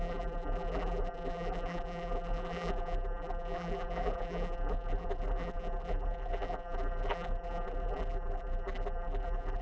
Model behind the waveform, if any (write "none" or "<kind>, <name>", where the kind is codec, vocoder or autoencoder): vocoder, BigVGAN v2